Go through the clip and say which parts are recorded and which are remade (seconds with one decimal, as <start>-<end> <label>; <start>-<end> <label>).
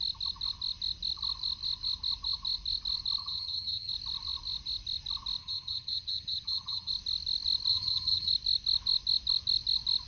0.0-3.2 recorded; 3.2-3.9 remade; 3.9-5.4 recorded; 5.4-6.9 remade; 6.9-7.7 recorded; 7.7-8.3 remade; 8.3-10.1 recorded